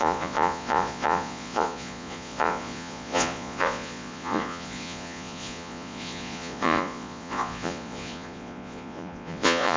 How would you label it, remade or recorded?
remade